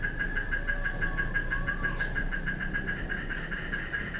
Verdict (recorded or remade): recorded